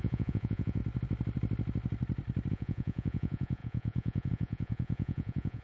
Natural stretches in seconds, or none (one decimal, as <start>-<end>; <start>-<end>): 0.8-2.5